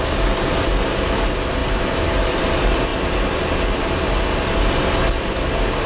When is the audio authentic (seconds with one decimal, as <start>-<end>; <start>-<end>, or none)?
none